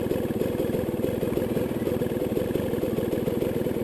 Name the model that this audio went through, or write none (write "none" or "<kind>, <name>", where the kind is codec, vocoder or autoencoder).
none